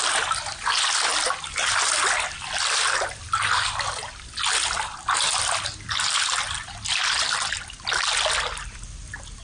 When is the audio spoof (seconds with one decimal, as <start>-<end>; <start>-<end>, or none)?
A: none